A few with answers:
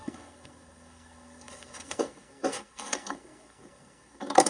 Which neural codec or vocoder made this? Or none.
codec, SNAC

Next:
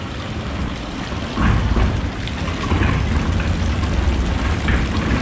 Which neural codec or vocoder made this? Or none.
none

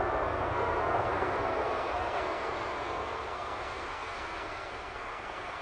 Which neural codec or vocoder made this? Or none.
codec, SNAC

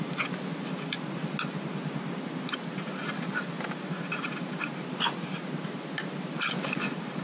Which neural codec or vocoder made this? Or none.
none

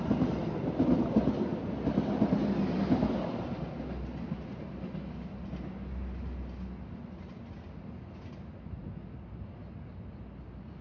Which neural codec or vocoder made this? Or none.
none